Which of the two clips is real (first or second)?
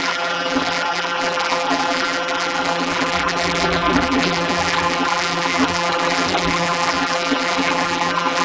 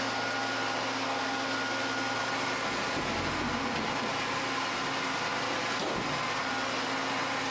second